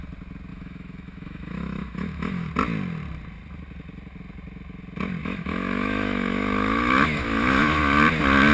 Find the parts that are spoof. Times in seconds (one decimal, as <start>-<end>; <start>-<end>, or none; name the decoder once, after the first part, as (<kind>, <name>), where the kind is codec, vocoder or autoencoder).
0.5-2.5 (autoencoder, DAC-VAE); 5.2-7.8